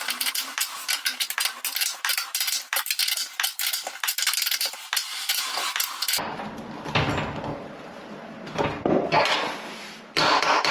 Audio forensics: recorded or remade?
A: recorded